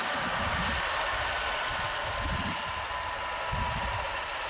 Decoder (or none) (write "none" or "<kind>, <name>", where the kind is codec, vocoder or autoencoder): none